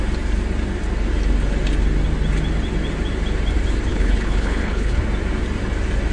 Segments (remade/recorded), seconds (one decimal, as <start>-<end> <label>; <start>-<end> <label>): 0.0-3.9 recorded; 3.9-5.0 remade; 5.0-6.1 recorded